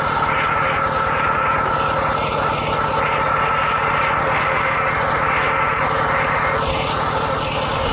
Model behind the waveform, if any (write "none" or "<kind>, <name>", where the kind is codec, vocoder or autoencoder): none